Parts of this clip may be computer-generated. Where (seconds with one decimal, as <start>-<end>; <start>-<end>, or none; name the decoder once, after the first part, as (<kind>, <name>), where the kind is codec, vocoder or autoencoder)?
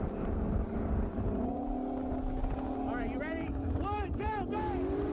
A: none